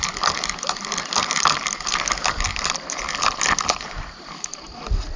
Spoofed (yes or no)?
no